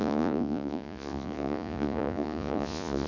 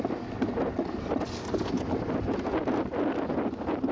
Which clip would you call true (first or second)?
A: second